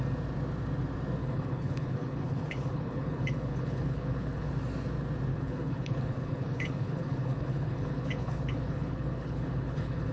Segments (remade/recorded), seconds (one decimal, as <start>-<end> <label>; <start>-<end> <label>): 0.0-1.2 recorded; 1.2-4.5 remade; 4.5-5.3 recorded; 5.3-10.1 remade